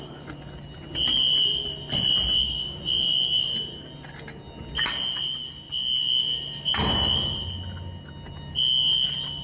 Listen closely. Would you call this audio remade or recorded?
recorded